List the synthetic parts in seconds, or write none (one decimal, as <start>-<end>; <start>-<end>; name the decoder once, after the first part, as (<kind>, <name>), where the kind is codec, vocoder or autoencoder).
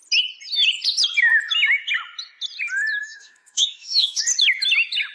3.0-4.2 (autoencoder, DAC-VAE)